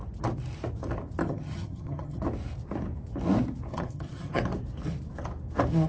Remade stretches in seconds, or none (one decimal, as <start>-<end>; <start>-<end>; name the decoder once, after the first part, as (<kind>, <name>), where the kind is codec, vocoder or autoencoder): 1.2-2.2 (vocoder, HiFi-GAN); 3.7-4.4